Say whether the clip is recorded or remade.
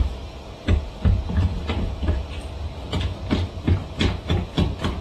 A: recorded